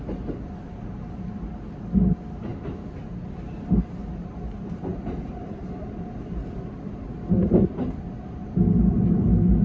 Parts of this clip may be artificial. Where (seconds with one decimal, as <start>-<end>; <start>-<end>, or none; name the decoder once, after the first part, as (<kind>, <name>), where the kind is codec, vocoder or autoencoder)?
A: none